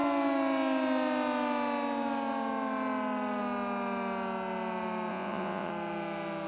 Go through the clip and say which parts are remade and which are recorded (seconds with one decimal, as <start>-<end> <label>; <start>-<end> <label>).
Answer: 0.0-5.1 recorded; 5.1-5.7 remade; 5.7-6.5 recorded